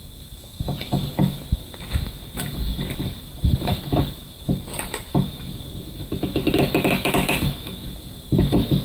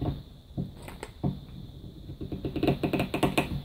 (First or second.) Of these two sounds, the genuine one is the second